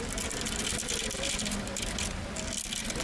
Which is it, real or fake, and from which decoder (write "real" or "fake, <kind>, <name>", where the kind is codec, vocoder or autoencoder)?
real